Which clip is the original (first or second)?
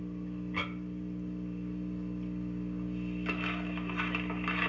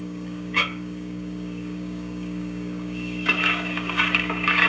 first